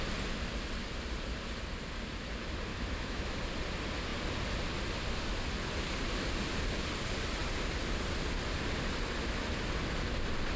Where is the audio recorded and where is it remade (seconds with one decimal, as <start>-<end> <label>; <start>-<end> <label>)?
0.0-2.7 recorded; 2.7-3.4 remade; 3.4-10.6 recorded